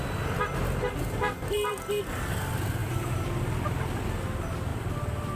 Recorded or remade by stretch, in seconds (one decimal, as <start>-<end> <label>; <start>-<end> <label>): 0.0-5.4 recorded